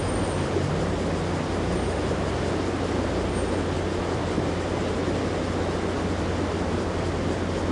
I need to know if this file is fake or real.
real